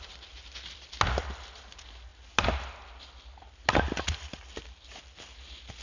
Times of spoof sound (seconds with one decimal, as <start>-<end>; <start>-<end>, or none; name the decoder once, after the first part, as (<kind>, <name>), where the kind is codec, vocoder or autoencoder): none